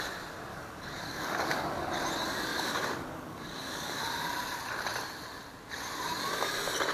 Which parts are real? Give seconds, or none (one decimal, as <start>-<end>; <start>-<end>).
0.0-0.5; 1.9-2.5; 4.0-6.9